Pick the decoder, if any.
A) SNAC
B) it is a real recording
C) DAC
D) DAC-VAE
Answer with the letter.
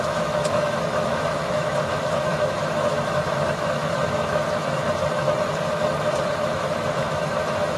D